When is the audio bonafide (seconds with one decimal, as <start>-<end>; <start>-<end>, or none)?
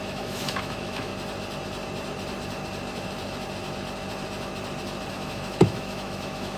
1.1-5.1